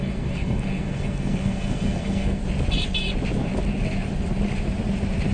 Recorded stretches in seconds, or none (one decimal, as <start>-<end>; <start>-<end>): 2.4-5.3